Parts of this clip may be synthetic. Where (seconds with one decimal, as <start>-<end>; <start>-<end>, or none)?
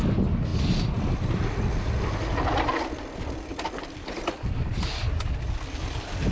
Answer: none